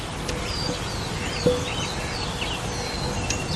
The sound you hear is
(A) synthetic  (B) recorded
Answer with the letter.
B